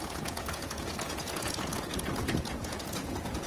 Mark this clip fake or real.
fake